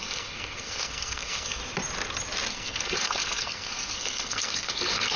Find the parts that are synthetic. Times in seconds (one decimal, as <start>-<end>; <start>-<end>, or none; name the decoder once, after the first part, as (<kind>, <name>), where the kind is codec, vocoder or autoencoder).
0.0-1.6 (codec, SNAC); 2.5-5.2